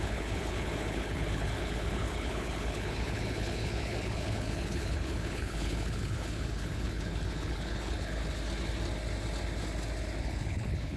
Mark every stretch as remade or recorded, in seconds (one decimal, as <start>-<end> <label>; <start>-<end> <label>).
0.0-8.2 remade; 8.2-10.2 recorded; 10.2-11.0 remade